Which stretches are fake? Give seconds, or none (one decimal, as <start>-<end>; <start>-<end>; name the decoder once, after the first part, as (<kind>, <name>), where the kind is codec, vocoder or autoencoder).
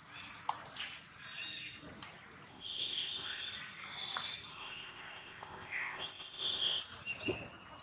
2.5-3.5 (codec, ZipCodec); 4.5-6.8